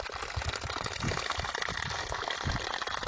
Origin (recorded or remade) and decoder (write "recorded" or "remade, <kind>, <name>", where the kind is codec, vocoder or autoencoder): recorded